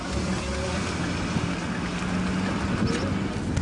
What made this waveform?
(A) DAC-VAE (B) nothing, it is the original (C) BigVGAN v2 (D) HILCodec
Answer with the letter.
B